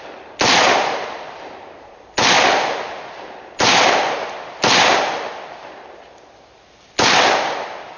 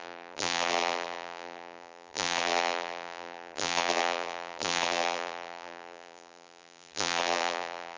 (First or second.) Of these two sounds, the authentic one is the first